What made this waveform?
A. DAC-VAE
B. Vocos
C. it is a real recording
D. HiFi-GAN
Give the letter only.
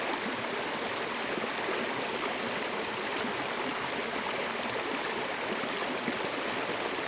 C